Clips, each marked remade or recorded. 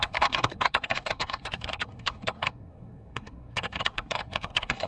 remade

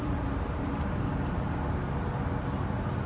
recorded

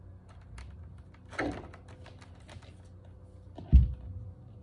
recorded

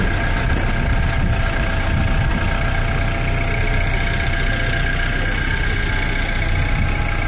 recorded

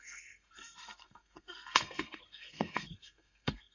remade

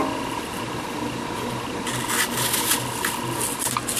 recorded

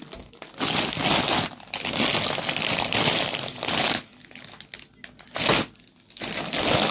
recorded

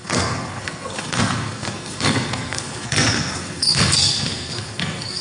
remade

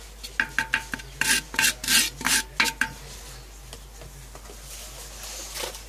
recorded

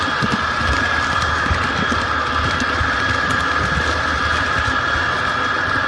recorded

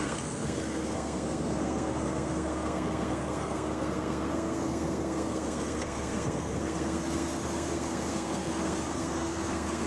remade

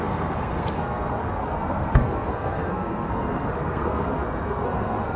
remade